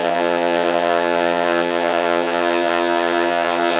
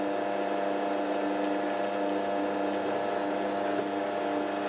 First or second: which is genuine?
second